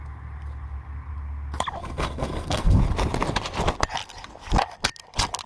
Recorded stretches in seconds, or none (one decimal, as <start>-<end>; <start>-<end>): 0.0-1.8; 2.8-5.5